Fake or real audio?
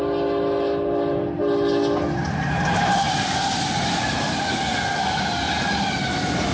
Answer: real